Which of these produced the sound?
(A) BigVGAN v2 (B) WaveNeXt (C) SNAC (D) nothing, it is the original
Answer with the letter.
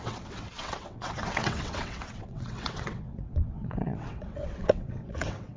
B